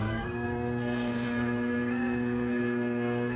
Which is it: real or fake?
fake